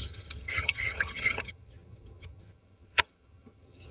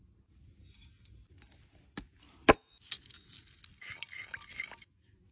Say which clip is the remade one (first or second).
first